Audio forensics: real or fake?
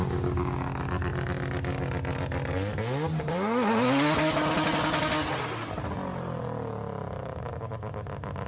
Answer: real